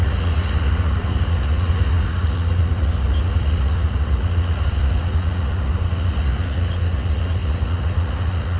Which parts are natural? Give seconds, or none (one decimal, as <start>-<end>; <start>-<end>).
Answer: none